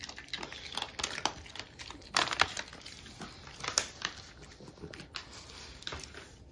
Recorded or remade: recorded